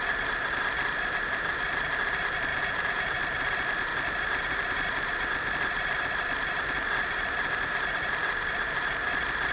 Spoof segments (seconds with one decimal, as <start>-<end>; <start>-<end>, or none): 2.5-3.2